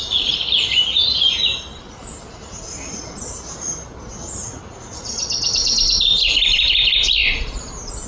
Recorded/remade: recorded